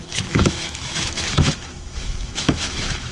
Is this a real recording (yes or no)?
no